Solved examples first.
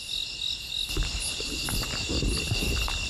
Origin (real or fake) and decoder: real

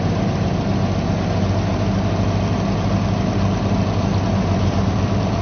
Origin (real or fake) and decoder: real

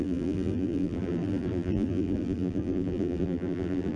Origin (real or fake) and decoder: fake, vocoder, BigVGAN v2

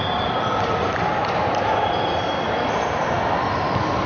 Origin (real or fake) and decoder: real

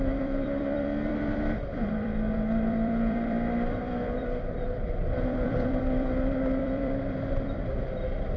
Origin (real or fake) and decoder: fake, vocoder, BigVGAN v2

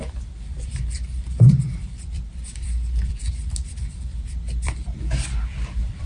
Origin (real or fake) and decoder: fake, vocoder, BigVGAN v2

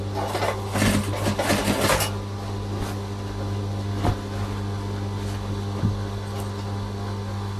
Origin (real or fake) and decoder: real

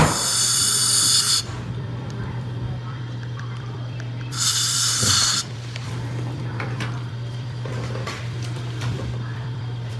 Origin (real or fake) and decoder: fake, vocoder, BigVGAN v2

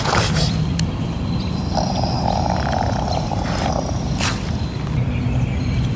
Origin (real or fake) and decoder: fake, vocoder, BigVGAN v2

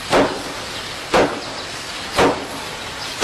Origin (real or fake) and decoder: real